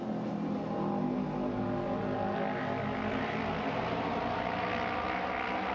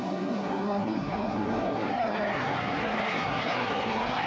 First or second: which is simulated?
second